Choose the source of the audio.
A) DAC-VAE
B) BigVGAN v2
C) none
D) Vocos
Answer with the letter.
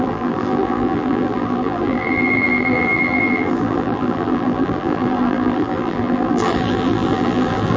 B